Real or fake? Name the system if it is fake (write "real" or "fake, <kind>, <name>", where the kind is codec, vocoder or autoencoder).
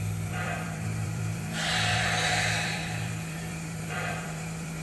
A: fake, vocoder, BigVGAN v2